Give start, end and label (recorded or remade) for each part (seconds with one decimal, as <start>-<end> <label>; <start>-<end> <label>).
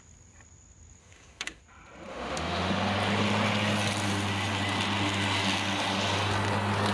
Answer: 0.0-1.0 recorded; 1.0-1.6 remade; 1.6-2.1 recorded; 2.1-2.7 remade; 2.7-6.9 recorded